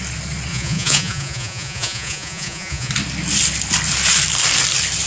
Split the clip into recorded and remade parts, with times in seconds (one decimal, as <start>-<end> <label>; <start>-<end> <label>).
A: 0.0-0.5 recorded; 0.5-2.9 remade; 2.9-5.1 recorded